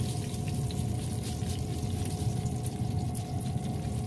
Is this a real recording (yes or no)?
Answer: yes